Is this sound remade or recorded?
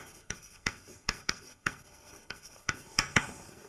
remade